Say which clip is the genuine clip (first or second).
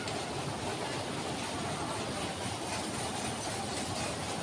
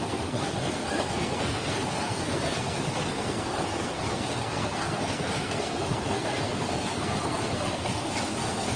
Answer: first